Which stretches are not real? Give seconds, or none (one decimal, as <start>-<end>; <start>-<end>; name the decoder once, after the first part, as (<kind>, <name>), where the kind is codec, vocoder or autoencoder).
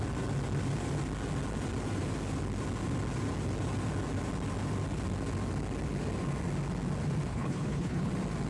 7.3-8.1 (codec, HILCodec)